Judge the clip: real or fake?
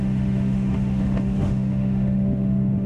fake